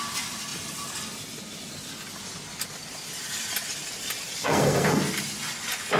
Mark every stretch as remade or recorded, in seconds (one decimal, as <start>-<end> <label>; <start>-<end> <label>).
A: 0.0-4.4 recorded; 4.4-5.0 remade; 5.0-6.0 recorded